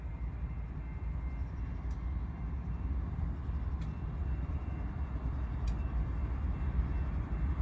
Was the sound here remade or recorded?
recorded